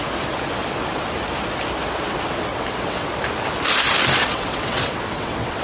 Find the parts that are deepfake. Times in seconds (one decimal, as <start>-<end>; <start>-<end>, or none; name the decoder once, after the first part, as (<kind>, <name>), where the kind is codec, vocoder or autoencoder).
2.5-3.1 (vocoder, WaveNeXt); 4.2-5.6